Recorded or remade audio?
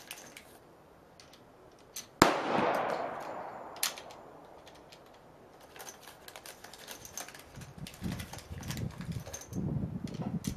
recorded